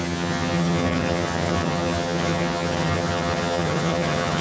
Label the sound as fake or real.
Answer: fake